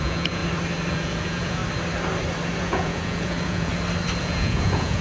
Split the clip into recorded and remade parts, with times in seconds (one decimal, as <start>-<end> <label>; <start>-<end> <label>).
0.0-0.4 remade; 0.4-0.9 recorded; 0.9-1.6 remade; 1.6-2.6 recorded; 2.6-3.7 remade; 3.7-4.2 recorded; 4.2-5.0 remade